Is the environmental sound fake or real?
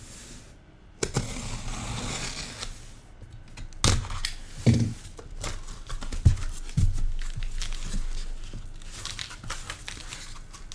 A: real